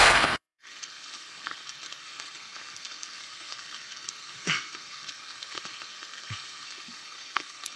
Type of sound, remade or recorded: remade